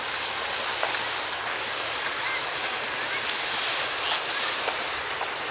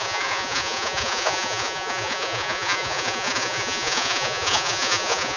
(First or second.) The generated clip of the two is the second